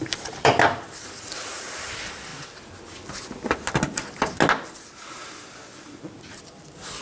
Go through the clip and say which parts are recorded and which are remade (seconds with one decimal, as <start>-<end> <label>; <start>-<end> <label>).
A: 0.0-2.3 remade; 2.3-6.2 recorded; 6.2-7.0 remade